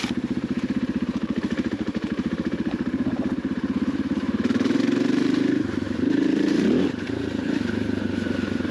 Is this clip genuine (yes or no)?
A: no